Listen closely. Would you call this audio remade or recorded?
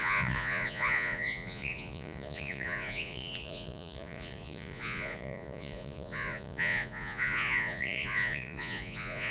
remade